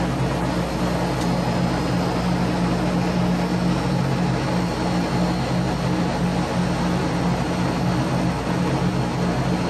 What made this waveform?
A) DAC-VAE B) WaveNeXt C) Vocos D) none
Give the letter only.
D